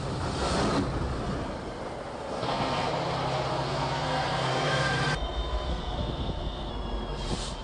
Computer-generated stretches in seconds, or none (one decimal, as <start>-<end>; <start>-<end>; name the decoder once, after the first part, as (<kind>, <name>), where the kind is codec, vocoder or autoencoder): 2.3-2.9 (codec, SNAC); 3.5-4.9; 5.7-6.7